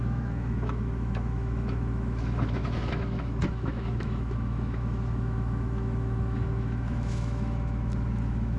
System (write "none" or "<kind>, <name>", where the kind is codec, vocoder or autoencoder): autoencoder, DAC-VAE